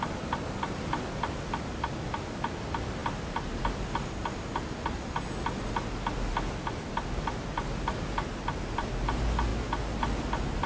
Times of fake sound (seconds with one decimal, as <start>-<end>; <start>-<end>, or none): none

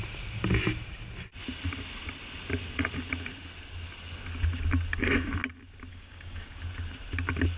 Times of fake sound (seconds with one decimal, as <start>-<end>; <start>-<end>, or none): 5.9-6.6

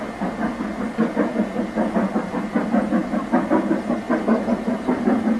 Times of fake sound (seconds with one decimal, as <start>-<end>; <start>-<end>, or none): none

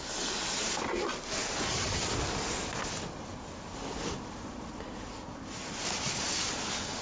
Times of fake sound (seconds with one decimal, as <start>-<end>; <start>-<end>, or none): none

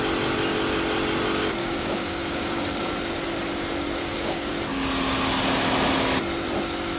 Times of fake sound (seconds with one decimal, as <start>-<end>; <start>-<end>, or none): 1.6-2.9; 4.0-4.5

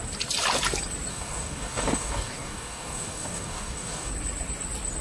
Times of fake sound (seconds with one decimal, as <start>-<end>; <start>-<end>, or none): 1.1-4.1

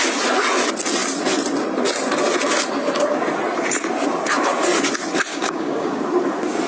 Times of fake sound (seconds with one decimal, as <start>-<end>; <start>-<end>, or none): 5.3-6.0